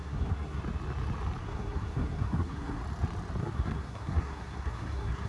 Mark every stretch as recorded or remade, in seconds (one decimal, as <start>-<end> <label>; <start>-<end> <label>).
0.0-0.6 remade; 0.6-1.4 recorded; 1.4-2.8 remade; 2.8-3.4 recorded; 3.4-5.3 remade

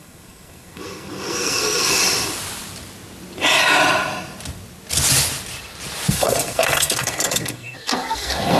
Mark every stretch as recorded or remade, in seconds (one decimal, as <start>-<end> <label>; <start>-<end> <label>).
0.0-2.0 remade; 2.0-6.1 recorded; 6.1-8.6 remade

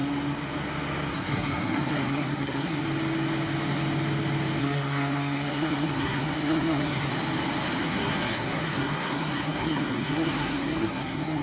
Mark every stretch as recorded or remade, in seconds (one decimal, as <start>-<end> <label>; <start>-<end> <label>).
0.0-1.1 recorded; 1.1-2.8 remade; 2.8-4.6 recorded; 4.6-7.1 remade; 7.1-7.8 recorded; 7.8-11.4 remade

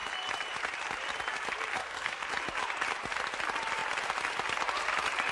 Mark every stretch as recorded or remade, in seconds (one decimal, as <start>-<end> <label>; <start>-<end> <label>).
0.0-1.8 recorded; 1.8-2.3 remade; 2.3-5.3 recorded